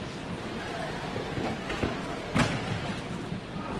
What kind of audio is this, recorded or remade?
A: recorded